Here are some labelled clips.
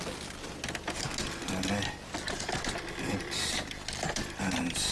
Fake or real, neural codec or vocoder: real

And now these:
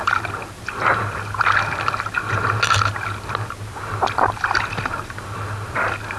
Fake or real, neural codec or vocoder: real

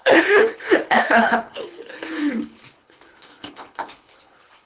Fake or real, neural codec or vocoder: fake, codec, HILCodec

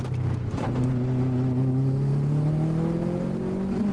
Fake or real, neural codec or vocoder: real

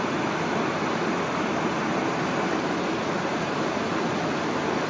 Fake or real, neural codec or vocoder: real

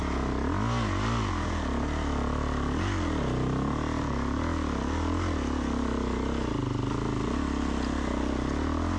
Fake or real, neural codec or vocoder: real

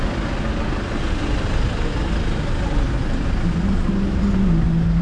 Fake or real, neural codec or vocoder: real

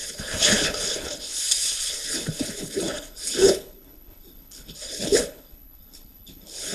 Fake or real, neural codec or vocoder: fake, codec, HILCodec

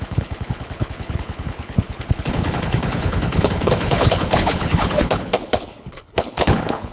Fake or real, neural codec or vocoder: fake, codec, HILCodec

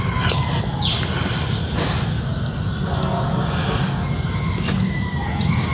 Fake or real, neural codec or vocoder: real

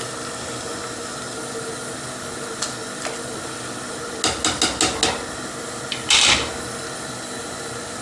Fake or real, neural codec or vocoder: real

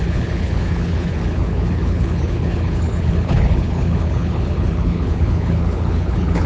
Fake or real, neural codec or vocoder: fake, codec, HILCodec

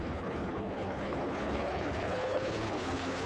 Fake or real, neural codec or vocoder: fake, codec, HILCodec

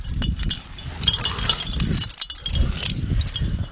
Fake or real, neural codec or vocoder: real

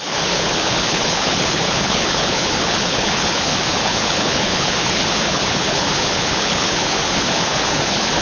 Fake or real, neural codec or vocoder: fake, codec, HILCodec